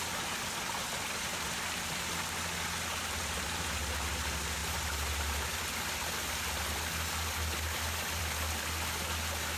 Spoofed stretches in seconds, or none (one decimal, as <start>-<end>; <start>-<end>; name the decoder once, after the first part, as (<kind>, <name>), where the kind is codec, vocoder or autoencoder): none